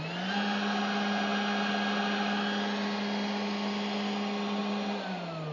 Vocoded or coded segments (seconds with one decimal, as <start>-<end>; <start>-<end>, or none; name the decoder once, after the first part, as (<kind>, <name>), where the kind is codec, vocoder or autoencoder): none